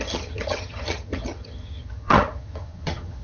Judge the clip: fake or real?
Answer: fake